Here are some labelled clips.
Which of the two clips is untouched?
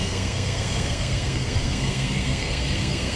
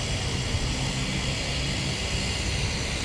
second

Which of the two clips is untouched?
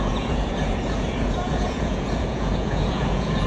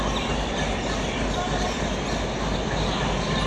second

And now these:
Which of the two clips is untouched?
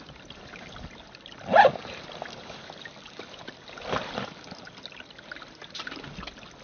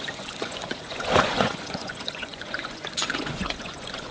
first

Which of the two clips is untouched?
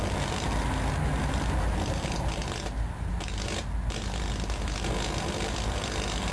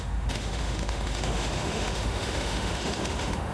first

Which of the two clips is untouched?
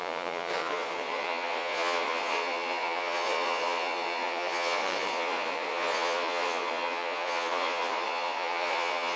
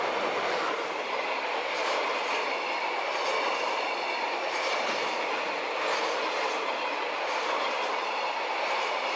second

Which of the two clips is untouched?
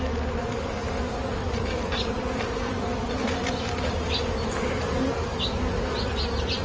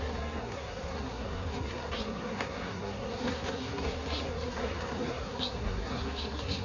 first